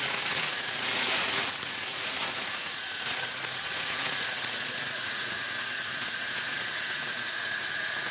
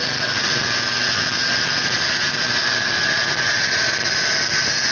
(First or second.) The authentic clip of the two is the second